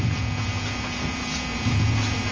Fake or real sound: fake